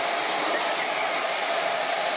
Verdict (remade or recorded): recorded